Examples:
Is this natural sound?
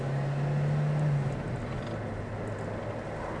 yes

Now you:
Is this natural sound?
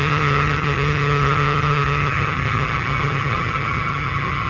no